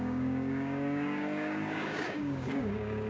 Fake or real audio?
fake